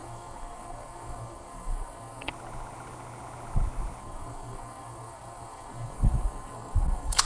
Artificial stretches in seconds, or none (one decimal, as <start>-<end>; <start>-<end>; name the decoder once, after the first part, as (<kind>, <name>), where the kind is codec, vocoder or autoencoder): 0.0-2.3 (codec, SNAC); 4.0-7.2